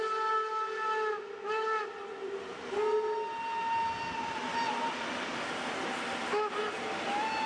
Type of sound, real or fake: real